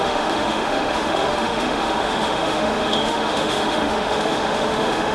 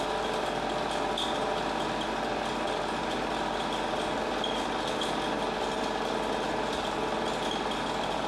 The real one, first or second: second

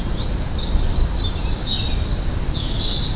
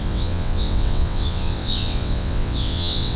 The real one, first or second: first